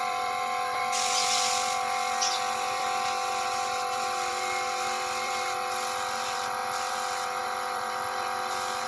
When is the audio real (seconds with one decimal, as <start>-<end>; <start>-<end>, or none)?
none